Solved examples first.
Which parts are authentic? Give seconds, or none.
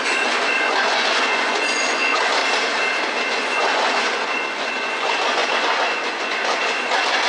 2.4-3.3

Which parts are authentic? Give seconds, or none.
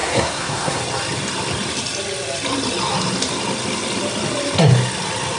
0.8-5.4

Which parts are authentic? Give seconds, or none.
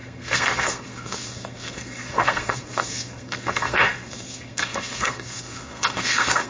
none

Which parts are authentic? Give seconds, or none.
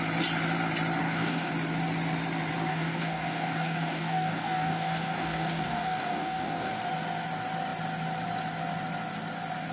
0.0-1.0; 1.5-2.7; 6.7-9.7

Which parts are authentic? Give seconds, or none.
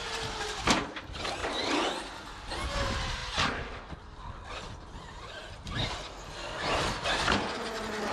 0.0-8.1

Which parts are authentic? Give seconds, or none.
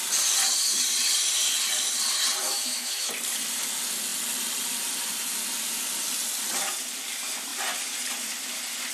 0.0-2.4; 3.1-8.9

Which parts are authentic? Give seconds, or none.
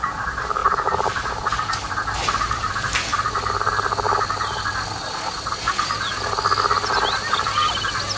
0.0-0.6; 2.7-3.1; 3.7-8.2